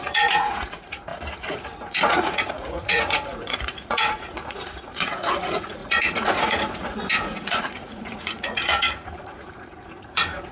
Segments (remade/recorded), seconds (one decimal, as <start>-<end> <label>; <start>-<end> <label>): 0.0-10.5 remade